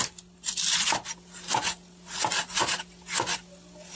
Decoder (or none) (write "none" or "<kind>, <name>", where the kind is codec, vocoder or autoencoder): none